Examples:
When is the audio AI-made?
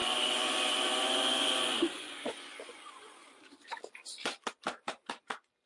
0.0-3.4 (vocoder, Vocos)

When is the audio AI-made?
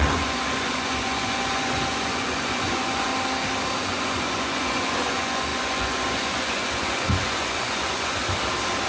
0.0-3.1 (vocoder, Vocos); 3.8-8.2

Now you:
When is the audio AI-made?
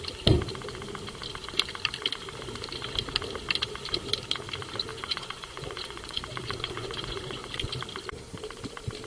4.9-7.7 (vocoder, Vocos)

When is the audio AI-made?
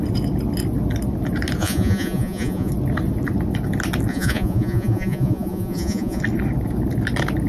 1.6-2.7 (vocoder, Vocos); 4.1-6.2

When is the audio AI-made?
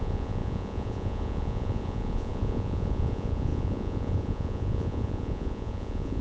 0.0-6.2 (vocoder, Vocos)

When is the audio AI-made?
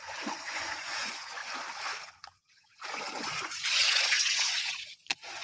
0.0-1.4 (vocoder, Vocos); 2.0-5.4